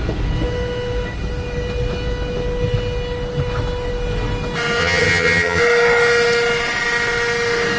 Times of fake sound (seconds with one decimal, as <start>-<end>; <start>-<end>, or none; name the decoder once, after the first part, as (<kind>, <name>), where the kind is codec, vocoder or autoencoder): 4.8-5.6 (vocoder, HiFi-GAN)